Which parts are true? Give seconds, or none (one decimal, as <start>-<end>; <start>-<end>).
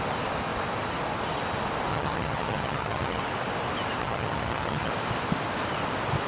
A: 0.0-1.9; 3.2-4.0; 4.9-6.3